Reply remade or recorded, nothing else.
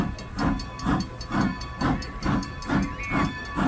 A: recorded